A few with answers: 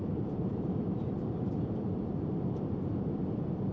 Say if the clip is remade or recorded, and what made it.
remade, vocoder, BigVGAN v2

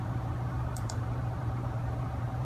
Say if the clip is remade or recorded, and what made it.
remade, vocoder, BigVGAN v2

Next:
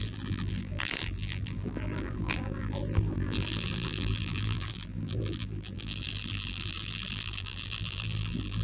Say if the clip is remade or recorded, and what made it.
remade, vocoder, BigVGAN v2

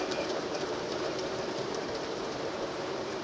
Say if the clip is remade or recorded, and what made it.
remade, vocoder, BigVGAN v2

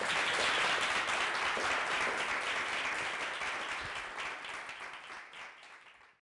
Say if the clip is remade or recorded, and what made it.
recorded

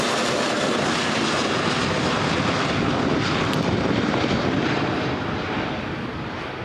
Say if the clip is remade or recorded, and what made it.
remade, vocoder, BigVGAN v2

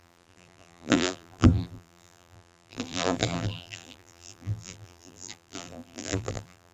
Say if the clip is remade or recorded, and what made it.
remade, vocoder, BigVGAN v2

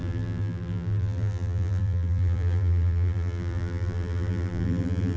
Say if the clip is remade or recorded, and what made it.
remade, vocoder, BigVGAN v2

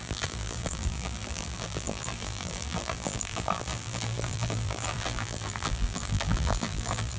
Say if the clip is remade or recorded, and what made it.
remade, vocoder, BigVGAN v2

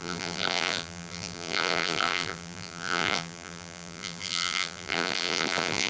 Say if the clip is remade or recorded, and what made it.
remade, vocoder, BigVGAN v2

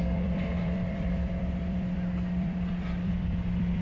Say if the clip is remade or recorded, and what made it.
remade, vocoder, BigVGAN v2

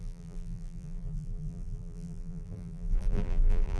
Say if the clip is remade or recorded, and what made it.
remade, vocoder, BigVGAN v2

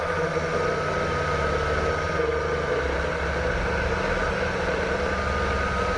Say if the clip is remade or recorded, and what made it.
recorded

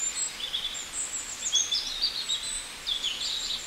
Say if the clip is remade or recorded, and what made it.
recorded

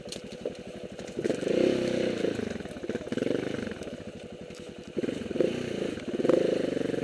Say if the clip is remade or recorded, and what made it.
recorded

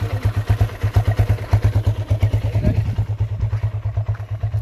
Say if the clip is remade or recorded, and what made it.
recorded